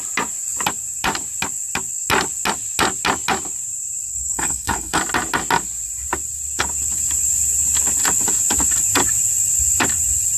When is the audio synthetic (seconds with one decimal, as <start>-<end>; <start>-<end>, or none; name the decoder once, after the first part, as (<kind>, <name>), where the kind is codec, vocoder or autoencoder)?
4.1-5.0 (codec, SNAC)